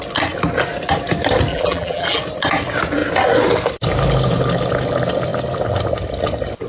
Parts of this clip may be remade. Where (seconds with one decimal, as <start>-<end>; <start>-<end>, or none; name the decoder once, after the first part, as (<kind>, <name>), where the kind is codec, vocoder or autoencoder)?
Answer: 1.5-2.2 (vocoder, BigVGAN v2)